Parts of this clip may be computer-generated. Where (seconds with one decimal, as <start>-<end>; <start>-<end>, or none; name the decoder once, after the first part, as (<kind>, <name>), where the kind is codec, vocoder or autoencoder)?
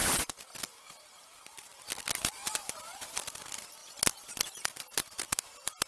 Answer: 3.8-4.5 (vocoder, BigVGAN v2)